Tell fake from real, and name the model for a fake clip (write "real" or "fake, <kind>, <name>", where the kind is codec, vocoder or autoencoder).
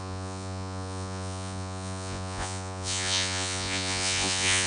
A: fake, vocoder, Vocos